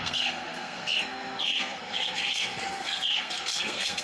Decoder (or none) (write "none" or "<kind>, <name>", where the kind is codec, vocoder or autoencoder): codec, SNAC